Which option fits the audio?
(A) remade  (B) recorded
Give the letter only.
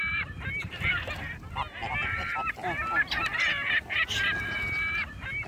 B